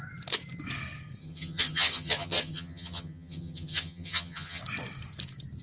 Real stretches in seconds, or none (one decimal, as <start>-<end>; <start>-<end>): 0.0-1.2; 4.6-5.6